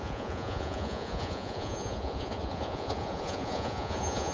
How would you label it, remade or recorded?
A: remade